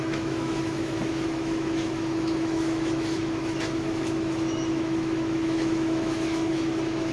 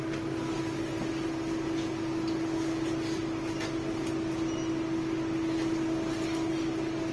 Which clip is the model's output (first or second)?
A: first